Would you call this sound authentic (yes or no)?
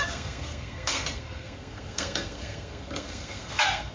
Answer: no